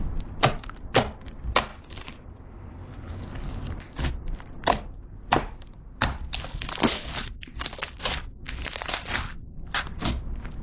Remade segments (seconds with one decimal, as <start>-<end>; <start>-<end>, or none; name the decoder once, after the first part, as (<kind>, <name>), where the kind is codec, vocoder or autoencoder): none